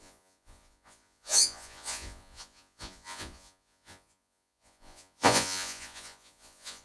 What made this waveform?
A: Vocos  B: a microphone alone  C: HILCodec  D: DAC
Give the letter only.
A